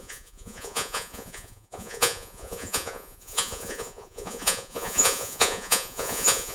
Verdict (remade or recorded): remade